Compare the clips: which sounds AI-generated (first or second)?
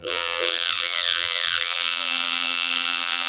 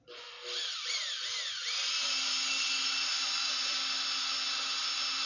first